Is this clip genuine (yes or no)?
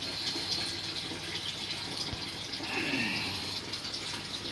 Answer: yes